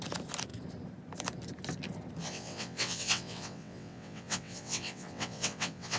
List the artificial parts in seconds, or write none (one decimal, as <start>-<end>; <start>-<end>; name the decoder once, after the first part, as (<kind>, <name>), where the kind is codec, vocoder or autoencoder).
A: 2.2-6.0 (vocoder, WaveNeXt)